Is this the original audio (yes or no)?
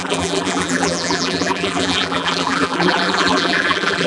no